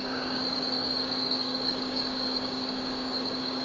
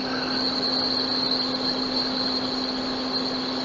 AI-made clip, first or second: first